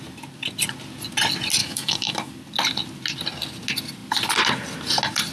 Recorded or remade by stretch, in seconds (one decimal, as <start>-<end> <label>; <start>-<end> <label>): 0.0-1.6 recorded; 1.6-2.3 remade; 2.3-5.3 recorded